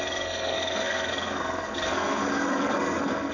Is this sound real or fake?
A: fake